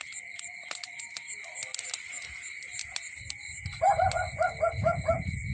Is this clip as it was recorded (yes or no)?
yes